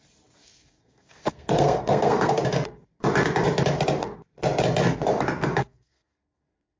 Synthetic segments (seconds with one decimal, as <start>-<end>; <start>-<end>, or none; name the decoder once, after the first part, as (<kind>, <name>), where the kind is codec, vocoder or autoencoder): 0.4-2.4 (codec, SNAC); 5.6-6.8